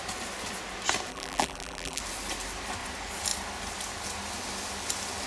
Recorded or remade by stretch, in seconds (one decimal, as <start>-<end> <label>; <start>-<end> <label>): 0.0-1.1 recorded; 1.1-2.0 remade; 2.0-5.3 recorded